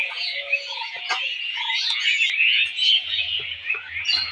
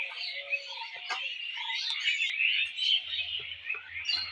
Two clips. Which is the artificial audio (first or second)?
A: first